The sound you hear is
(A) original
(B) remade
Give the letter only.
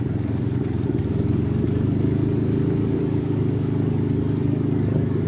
B